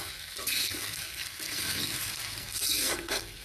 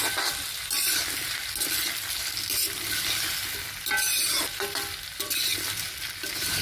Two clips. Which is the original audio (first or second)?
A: second